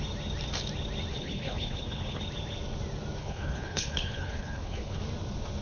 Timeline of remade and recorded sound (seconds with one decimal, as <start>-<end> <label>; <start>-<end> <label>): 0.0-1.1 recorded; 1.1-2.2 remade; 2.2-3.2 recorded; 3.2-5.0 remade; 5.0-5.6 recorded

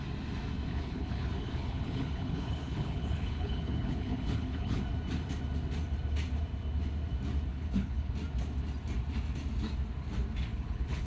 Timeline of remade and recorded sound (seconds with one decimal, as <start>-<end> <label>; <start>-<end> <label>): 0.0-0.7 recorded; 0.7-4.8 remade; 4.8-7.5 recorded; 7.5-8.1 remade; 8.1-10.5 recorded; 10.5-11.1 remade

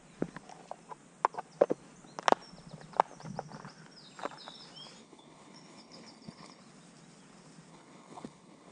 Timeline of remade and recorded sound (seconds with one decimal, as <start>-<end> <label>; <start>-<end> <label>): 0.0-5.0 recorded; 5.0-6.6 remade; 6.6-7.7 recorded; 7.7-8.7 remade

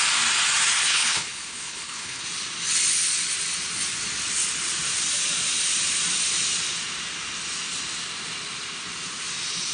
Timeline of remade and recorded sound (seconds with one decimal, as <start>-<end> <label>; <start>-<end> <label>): 0.0-0.8 recorded; 0.8-2.2 remade; 2.2-9.7 recorded

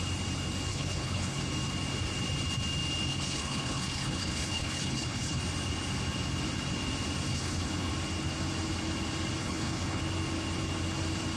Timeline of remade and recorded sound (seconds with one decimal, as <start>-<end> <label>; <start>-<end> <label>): 0.0-0.7 recorded; 0.7-1.4 remade; 1.4-3.1 recorded; 3.1-5.4 remade; 5.4-7.3 recorded; 7.3-7.9 remade; 7.9-9.4 recorded; 9.4-10.0 remade; 10.0-11.4 recorded

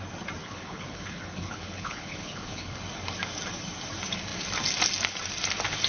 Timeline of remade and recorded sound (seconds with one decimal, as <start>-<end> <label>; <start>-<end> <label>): 0.0-0.4 recorded; 0.4-2.8 remade; 2.8-5.9 recorded

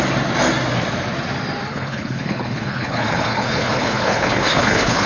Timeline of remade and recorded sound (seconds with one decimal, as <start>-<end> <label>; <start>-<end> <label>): 0.0-1.7 recorded; 1.7-5.1 remade

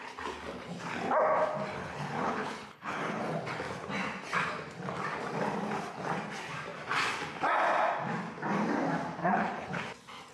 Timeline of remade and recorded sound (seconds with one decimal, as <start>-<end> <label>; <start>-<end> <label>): 0.0-1.8 recorded; 1.8-3.2 remade; 3.2-9.2 recorded; 9.2-9.8 remade; 9.8-10.3 recorded